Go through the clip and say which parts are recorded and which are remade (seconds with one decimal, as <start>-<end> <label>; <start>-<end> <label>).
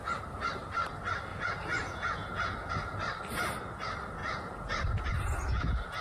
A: 0.0-1.3 recorded; 1.3-2.7 remade; 2.7-4.2 recorded; 4.2-6.0 remade